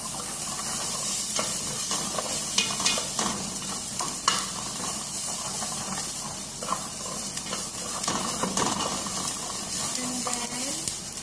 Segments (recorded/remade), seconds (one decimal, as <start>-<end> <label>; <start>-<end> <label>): 0.0-11.2 recorded